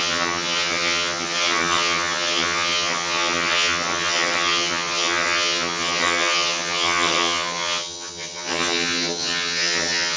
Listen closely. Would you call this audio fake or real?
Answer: fake